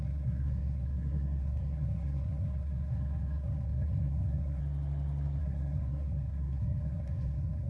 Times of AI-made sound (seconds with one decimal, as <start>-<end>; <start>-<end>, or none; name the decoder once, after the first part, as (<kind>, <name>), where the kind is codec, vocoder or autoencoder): 0.0-4.6 (codec, SNAC); 5.4-7.7